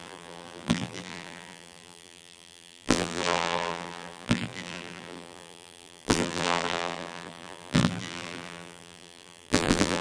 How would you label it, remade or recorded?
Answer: remade